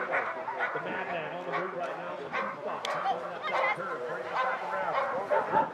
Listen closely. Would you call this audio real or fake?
real